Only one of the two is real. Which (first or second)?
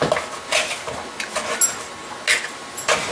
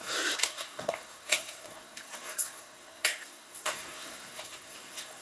first